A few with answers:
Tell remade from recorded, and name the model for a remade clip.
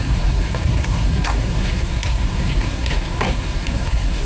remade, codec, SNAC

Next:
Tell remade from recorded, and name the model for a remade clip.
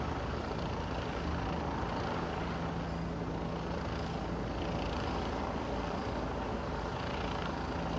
recorded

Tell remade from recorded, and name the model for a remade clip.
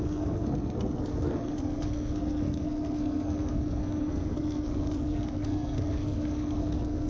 remade, codec, SNAC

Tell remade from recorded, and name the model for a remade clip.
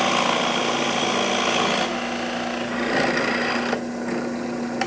recorded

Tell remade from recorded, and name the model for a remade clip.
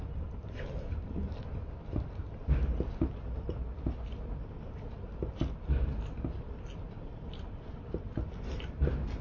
recorded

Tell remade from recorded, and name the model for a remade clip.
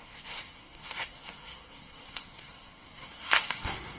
remade, codec, SNAC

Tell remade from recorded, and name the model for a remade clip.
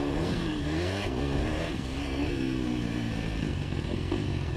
remade, codec, SNAC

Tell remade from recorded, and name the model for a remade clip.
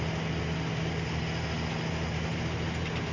recorded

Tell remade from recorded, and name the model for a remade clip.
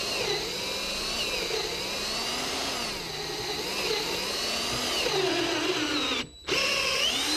recorded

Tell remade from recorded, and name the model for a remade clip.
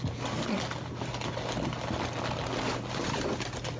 recorded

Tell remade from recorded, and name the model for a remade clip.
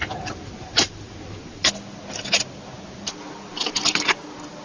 recorded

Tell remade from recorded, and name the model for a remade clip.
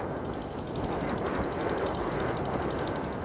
recorded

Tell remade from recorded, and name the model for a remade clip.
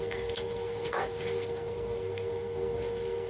remade, codec, SNAC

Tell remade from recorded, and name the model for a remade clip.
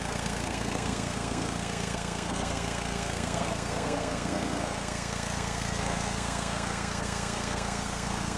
remade, codec, SNAC